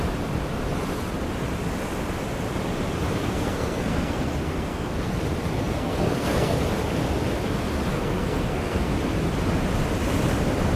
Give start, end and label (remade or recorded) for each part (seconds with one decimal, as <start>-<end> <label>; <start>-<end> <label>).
0.0-3.2 recorded; 3.2-5.1 remade; 5.1-5.6 recorded; 5.6-6.6 remade; 6.6-7.9 recorded; 7.9-8.9 remade; 8.9-10.8 recorded